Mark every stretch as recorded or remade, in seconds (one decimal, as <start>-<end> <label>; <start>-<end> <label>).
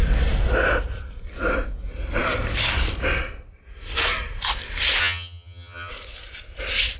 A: 0.0-5.0 recorded; 5.0-5.9 remade; 5.9-7.0 recorded